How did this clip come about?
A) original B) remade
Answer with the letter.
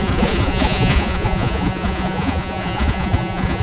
B